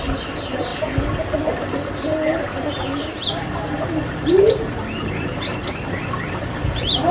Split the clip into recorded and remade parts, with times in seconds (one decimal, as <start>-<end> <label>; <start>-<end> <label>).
0.0-7.1 recorded